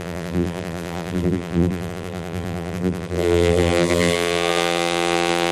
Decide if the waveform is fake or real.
fake